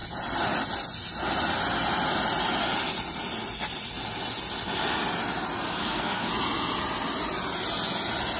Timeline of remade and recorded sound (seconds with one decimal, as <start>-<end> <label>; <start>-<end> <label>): 0.0-5.8 recorded; 5.8-6.3 remade; 6.3-8.4 recorded